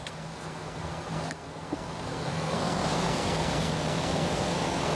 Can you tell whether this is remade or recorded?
remade